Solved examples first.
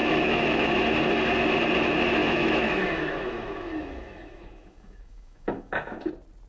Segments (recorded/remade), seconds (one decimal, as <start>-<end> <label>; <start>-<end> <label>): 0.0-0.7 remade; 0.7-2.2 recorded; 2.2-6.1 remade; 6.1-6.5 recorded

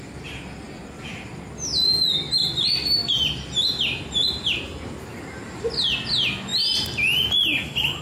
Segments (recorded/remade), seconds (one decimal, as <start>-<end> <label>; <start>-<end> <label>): 0.0-8.0 recorded

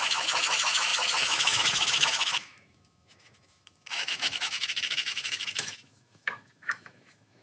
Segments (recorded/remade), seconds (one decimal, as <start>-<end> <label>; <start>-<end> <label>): 0.0-7.4 remade

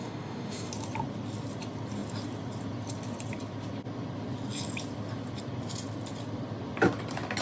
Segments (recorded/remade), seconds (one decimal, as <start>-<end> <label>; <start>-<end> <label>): 0.0-0.7 remade; 0.7-7.4 recorded